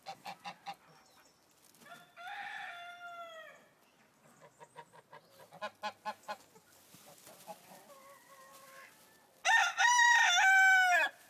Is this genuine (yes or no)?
yes